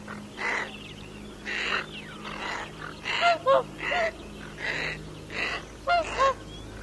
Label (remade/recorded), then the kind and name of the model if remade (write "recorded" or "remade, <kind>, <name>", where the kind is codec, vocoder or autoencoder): recorded